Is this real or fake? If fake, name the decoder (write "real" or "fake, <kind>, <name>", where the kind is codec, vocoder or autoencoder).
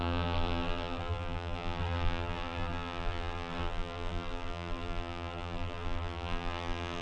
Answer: fake, vocoder, BigVGAN v2